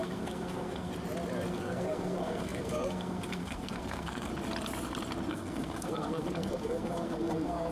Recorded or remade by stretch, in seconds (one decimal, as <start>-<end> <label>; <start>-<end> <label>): 0.0-0.9 remade; 0.9-1.5 recorded; 1.5-4.3 remade; 4.3-5.3 recorded; 5.3-7.7 remade